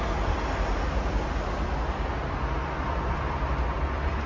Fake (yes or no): no